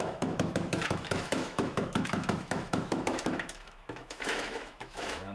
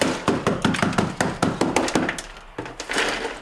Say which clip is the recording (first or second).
second